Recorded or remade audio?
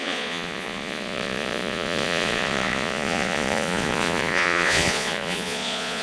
remade